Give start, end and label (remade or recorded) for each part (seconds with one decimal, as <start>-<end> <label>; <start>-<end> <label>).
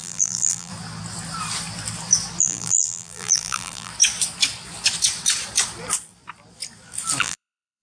0.0-0.7 remade; 0.7-2.4 recorded; 2.4-3.9 remade; 3.9-7.2 recorded; 7.2-7.8 remade